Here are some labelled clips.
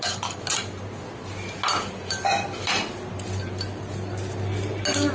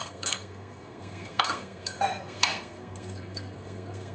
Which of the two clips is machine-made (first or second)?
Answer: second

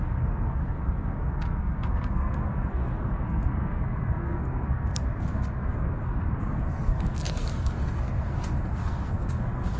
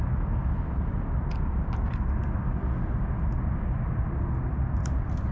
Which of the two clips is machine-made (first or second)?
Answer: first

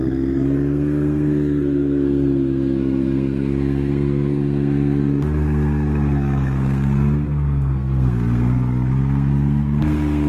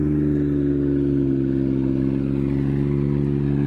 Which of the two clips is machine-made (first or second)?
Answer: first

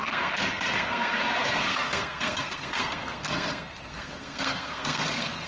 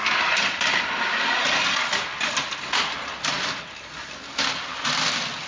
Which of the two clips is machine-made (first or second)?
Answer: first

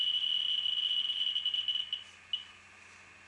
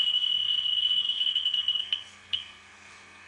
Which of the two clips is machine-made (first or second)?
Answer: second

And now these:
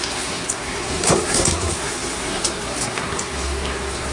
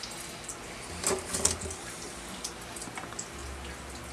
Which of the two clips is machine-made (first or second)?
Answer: first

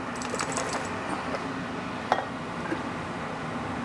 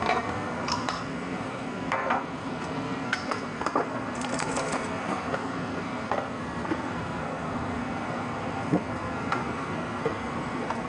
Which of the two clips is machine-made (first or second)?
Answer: second